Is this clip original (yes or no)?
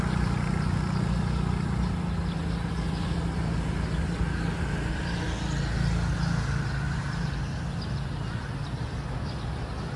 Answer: yes